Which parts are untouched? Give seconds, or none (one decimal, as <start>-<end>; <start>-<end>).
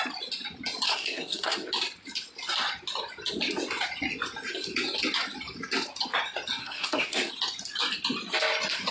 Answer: 0.0-0.9; 1.7-6.6; 7.3-8.9